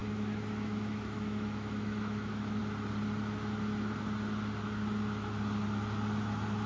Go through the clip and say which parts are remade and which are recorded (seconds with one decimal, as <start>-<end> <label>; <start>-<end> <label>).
0.0-2.6 remade; 2.6-6.7 recorded